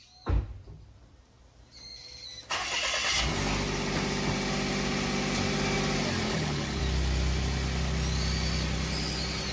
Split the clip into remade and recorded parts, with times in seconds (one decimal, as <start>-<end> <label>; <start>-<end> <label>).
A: 0.0-6.3 recorded; 6.3-6.8 remade; 6.8-9.5 recorded